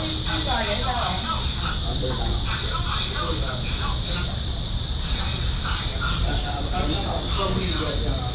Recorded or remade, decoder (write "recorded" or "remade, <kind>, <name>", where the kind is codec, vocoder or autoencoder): recorded